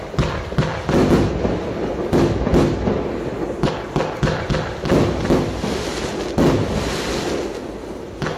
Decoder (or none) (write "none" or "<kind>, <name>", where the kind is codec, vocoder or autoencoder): none